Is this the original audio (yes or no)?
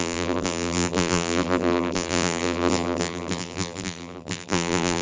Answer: no